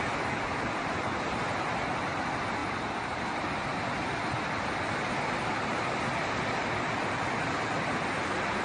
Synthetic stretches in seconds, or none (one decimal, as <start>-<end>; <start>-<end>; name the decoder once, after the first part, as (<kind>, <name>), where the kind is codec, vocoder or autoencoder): 2.6-3.2 (vocoder, BigVGAN v2)